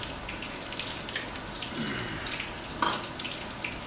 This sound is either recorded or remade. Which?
recorded